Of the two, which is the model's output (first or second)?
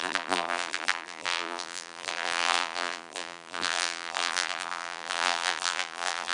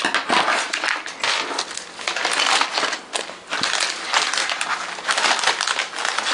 first